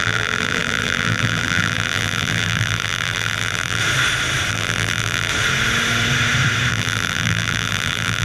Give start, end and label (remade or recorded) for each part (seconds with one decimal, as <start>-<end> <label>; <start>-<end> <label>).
0.0-3.8 remade; 3.8-4.5 recorded; 4.5-5.3 remade; 5.3-6.7 recorded; 6.7-8.2 remade